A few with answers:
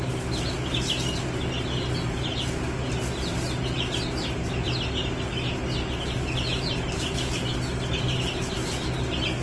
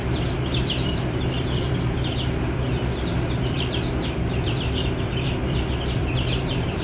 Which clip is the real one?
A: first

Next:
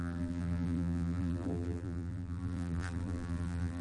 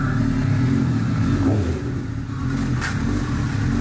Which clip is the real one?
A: second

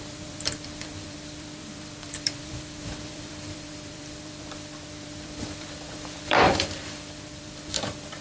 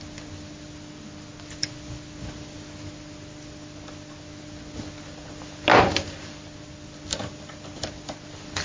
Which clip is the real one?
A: second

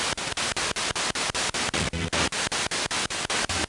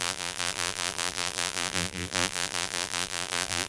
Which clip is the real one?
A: first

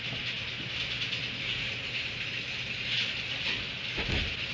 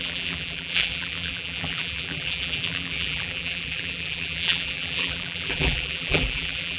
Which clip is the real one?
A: first